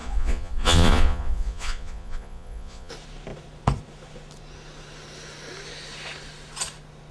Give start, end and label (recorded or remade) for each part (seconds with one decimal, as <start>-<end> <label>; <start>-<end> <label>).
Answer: 0.0-2.9 remade; 2.9-7.1 recorded